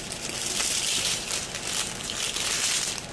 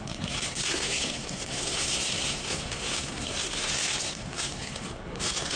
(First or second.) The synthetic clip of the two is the second